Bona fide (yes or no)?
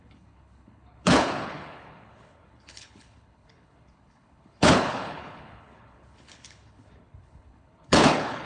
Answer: no